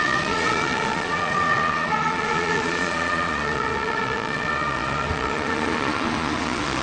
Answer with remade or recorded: remade